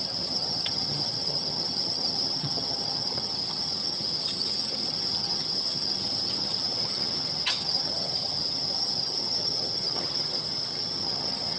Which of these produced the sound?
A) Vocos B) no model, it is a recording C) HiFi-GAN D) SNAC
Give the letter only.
C